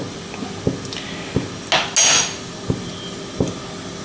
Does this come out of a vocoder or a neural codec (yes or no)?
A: no